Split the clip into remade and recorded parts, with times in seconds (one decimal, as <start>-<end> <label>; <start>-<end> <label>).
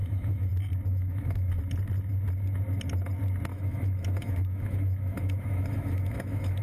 0.0-0.5 remade; 0.5-0.9 recorded; 0.9-1.5 remade; 1.5-3.5 recorded; 3.5-6.6 remade